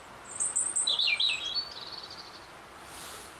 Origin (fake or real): real